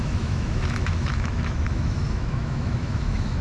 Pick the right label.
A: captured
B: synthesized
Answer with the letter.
B